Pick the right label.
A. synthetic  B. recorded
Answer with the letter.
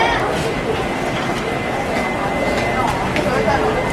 B